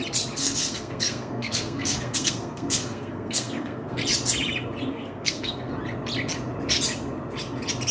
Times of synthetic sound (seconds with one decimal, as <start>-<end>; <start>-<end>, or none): 0.4-4.0; 4.9-5.7